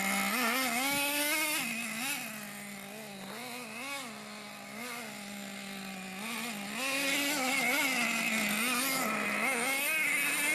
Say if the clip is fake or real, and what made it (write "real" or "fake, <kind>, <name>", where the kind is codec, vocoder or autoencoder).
real